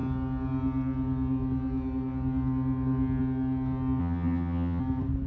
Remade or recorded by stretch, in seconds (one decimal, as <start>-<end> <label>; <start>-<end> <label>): 0.0-4.0 recorded; 4.0-4.8 remade; 4.8-5.3 recorded